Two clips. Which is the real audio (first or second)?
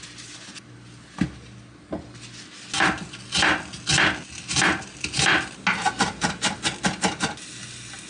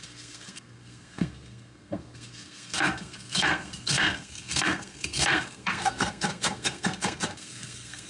first